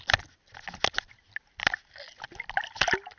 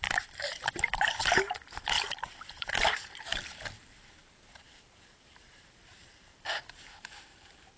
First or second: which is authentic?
first